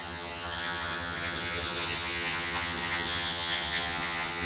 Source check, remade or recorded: remade